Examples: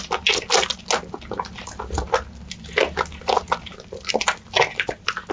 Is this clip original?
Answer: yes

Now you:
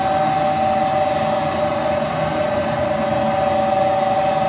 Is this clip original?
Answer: yes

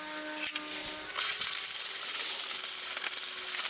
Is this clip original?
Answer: yes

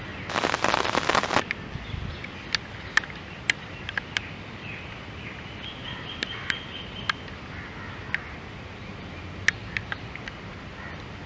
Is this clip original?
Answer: yes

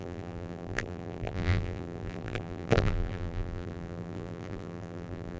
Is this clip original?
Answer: no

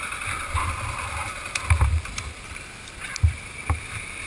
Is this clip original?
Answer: no